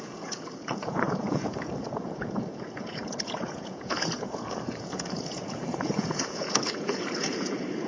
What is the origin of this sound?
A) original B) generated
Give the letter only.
B